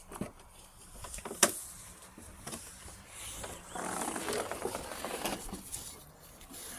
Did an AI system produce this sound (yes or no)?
no